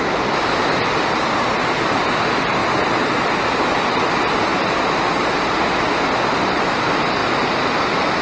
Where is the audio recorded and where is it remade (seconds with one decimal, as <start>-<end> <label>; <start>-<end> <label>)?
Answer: 0.0-8.2 recorded